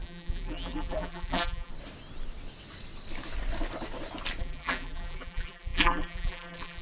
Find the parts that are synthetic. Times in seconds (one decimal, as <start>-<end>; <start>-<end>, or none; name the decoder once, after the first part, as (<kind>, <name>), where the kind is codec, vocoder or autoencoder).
0.0-1.7 (vocoder, BigVGAN v2); 4.4-6.8